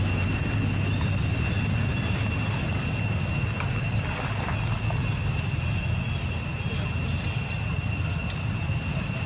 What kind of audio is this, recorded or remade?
recorded